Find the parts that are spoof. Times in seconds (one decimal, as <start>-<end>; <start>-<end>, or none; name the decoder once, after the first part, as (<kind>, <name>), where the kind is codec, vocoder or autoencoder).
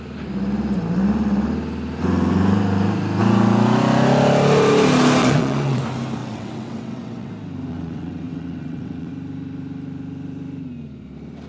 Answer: 5.2-5.8 (vocoder, WaveNeXt); 6.2-7.3; 7.7-9.1